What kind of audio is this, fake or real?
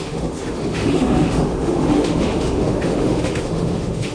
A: fake